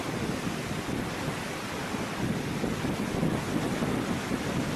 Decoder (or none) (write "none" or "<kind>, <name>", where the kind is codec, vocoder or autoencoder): none